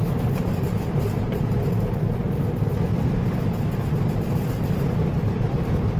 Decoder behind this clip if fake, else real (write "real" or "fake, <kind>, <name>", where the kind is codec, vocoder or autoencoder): fake, vocoder, BigVGAN v2